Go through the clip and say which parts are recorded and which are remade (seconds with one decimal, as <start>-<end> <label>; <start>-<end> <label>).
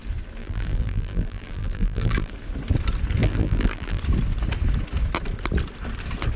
0.0-0.4 recorded; 0.4-2.3 remade; 2.3-3.2 recorded; 3.2-4.0 remade; 4.0-6.4 recorded